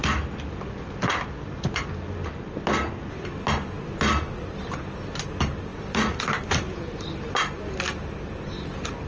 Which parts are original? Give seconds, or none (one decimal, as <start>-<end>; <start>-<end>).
0.0-5.7; 7.2-9.1

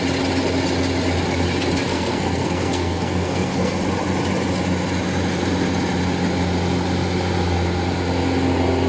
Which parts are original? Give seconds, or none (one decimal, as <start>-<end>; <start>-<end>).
0.0-1.9; 3.8-8.9

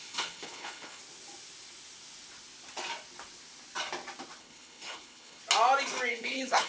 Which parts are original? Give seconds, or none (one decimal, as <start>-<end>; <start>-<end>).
1.0-4.4; 5.4-6.1

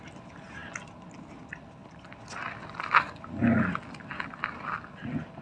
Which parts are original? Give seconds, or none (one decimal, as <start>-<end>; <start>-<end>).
0.0-5.4

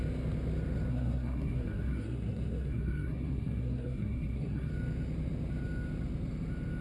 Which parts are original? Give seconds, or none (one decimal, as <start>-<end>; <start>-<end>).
0.0-0.9; 4.7-6.8

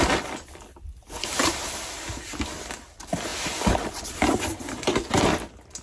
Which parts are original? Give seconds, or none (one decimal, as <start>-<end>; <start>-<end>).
0.0-5.8

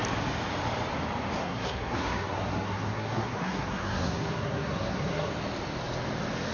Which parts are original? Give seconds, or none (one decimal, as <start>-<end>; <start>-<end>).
0.0-1.4; 5.3-6.5

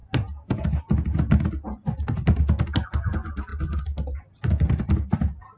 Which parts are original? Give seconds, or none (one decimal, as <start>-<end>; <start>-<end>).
0.0-5.6